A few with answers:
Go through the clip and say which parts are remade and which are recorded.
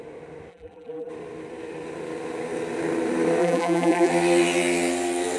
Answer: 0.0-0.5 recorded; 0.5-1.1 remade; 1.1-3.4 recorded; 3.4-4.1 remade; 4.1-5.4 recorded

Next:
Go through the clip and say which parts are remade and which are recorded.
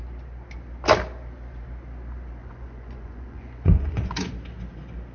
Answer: 0.0-2.4 recorded; 2.4-4.3 remade; 4.3-5.1 recorded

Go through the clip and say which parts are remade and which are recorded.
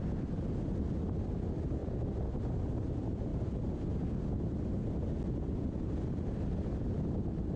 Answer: 0.0-7.6 recorded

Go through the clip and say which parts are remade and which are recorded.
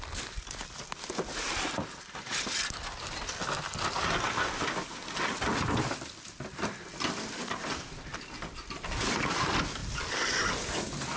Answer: 0.0-11.2 recorded